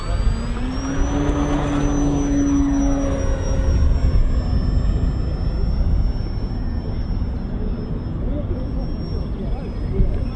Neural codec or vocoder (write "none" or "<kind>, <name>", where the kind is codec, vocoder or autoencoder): none